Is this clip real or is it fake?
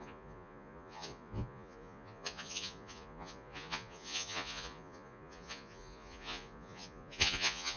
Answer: fake